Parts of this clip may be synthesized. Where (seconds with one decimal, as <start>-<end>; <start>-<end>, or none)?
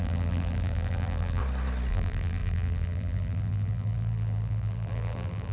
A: 0.0-1.4; 1.9-5.5